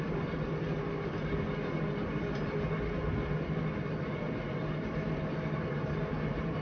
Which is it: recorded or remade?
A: recorded